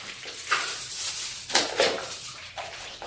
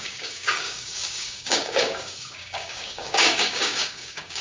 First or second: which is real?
first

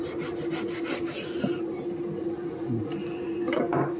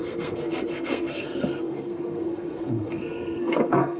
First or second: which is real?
first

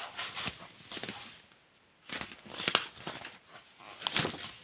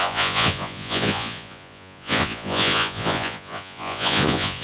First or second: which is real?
first